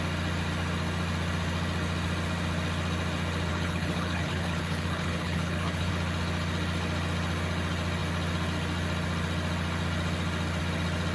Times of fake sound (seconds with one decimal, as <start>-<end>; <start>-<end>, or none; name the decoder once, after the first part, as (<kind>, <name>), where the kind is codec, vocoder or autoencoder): 3.5-5.9 (codec, HILCodec)